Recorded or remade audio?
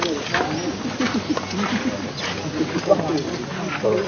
recorded